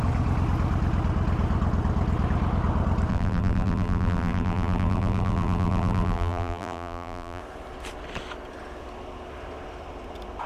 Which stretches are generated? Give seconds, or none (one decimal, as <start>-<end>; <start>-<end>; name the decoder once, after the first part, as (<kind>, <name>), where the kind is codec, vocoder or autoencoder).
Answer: 3.1-7.4 (vocoder, BigVGAN v2)